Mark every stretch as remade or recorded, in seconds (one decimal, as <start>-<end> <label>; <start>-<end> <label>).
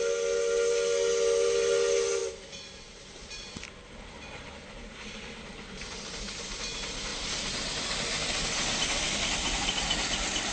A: 0.0-10.5 recorded